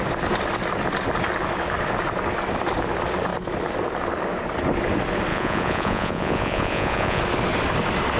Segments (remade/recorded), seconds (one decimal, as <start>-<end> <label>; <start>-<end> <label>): 0.0-5.3 recorded; 5.3-7.2 remade; 7.2-8.2 recorded